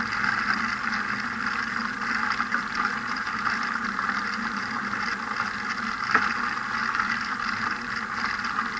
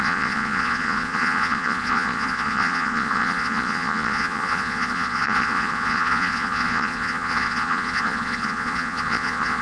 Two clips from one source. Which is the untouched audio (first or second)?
first